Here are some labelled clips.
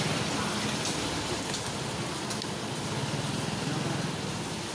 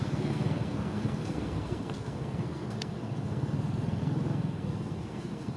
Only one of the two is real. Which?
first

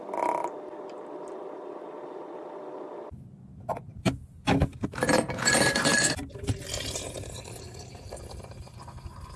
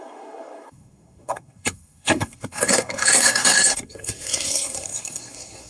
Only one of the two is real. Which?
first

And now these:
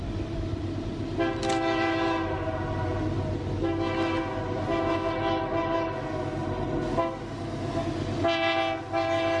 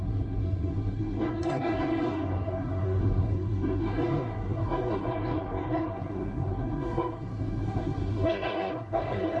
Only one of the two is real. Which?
first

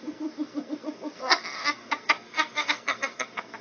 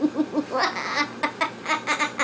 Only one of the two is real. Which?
second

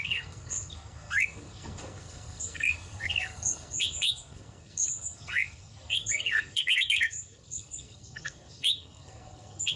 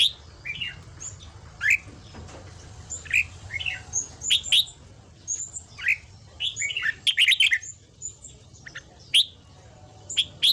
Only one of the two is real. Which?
second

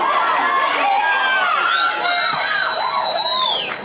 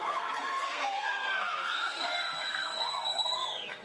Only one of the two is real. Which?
first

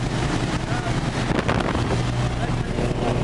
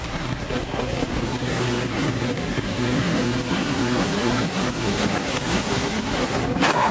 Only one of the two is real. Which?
first